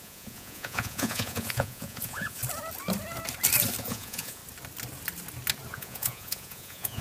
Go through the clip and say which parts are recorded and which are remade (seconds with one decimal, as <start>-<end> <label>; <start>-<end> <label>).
0.0-2.4 remade; 2.4-3.8 recorded; 3.8-4.4 remade; 4.4-5.7 recorded; 5.7-7.0 remade